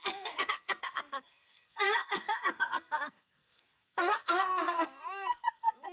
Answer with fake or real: fake